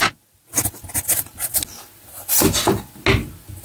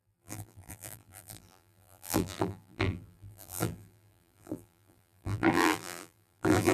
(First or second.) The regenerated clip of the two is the second